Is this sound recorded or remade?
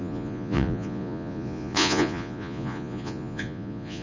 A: remade